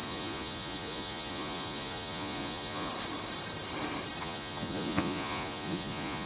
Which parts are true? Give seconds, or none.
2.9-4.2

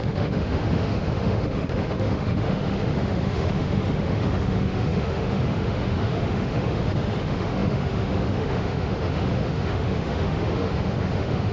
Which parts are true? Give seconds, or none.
none

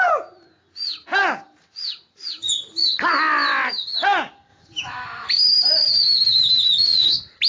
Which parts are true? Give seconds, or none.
0.0-4.5; 5.3-7.5